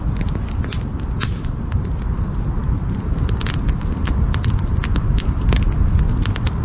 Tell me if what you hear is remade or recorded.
recorded